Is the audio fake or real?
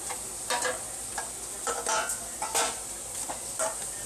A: real